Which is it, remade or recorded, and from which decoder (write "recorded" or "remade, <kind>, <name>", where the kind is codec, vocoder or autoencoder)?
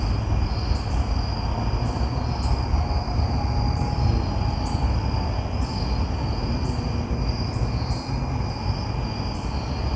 recorded